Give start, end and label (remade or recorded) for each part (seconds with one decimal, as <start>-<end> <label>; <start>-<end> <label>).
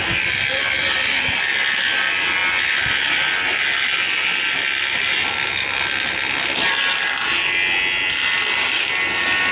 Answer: 0.0-9.5 recorded